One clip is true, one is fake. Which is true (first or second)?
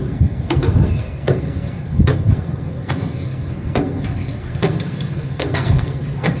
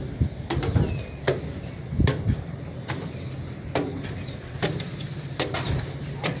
second